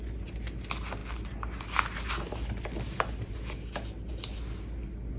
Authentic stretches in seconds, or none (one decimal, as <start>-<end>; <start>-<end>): 0.0-5.2